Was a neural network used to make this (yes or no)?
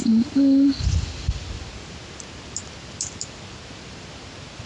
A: no